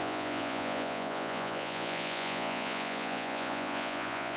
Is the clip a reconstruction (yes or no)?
yes